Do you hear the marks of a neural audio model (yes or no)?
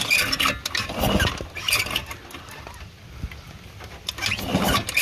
no